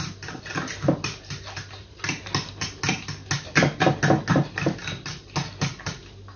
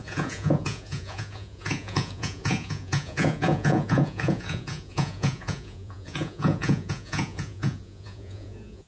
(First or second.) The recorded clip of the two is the first